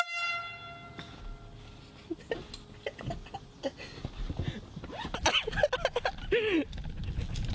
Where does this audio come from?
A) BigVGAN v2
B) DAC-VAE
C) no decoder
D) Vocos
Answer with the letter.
C